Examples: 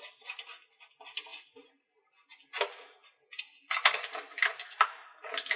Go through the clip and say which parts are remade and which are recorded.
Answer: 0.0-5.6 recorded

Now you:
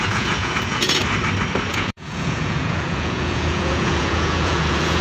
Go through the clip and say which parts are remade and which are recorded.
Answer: 0.0-1.0 remade; 1.0-1.7 recorded; 1.7-5.0 remade

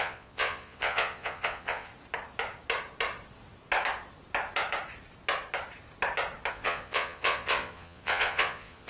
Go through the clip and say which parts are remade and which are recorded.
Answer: 0.0-1.9 remade; 1.9-6.5 recorded; 6.5-8.9 remade

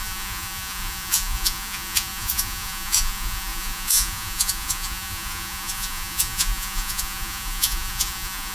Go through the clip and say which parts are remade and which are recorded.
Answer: 0.0-8.5 remade

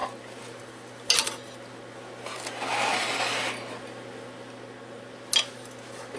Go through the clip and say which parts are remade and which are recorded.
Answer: 0.0-6.2 recorded